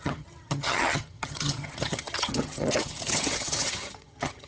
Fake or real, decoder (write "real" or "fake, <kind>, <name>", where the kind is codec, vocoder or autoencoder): fake, vocoder, HiFi-GAN